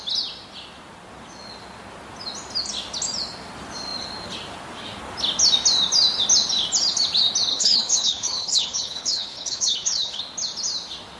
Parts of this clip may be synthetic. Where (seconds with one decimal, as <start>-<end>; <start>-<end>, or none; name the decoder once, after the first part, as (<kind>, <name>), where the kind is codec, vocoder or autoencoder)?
7.5-10.2 (codec, HILCodec)